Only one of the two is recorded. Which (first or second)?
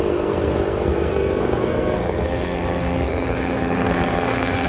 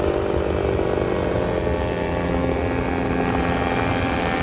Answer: second